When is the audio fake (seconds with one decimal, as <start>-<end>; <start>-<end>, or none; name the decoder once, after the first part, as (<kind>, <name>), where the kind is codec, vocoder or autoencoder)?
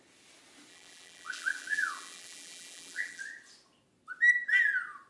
0.7-3.2 (vocoder, BigVGAN v2)